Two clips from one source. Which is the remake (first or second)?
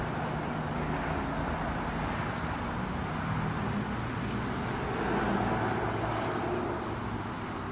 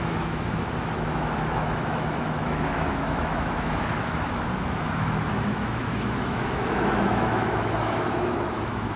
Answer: second